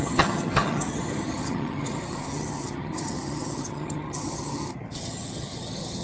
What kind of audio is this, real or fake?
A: fake